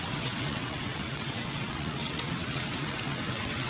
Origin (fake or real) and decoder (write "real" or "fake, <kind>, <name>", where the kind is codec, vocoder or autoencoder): fake, vocoder, WaveNeXt